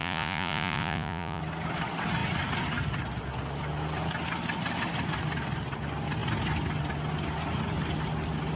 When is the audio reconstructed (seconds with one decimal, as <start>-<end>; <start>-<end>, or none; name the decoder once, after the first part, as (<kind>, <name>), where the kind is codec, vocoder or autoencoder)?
0.0-1.4 (vocoder, Vocos)

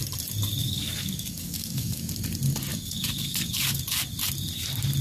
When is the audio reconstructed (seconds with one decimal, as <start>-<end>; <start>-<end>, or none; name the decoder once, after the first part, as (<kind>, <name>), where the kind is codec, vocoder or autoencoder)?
0.6-2.1 (codec, DAC); 2.7-3.8

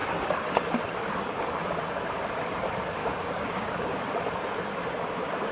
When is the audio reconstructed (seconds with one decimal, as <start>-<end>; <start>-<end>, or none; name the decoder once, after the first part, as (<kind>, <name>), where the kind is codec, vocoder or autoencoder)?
3.0-4.1 (codec, DAC)

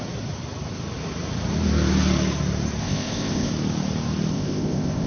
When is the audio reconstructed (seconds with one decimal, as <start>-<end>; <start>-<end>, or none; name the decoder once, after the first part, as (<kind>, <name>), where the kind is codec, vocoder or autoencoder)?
2.8-3.5 (codec, ZipCodec); 4.3-5.1

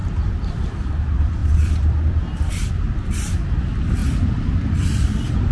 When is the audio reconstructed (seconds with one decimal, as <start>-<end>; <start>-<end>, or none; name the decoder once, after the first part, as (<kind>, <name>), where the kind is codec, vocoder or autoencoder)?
1.4-2.7 (vocoder, BigVGAN v2)

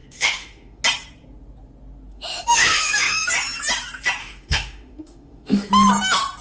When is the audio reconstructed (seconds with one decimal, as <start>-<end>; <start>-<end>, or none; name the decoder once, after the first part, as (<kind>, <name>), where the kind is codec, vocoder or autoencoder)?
0.0-0.8 (autoencoder, DAC-VAE); 2.1-3.3; 4.2-5.7